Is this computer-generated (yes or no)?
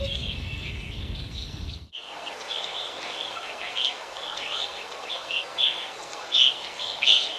yes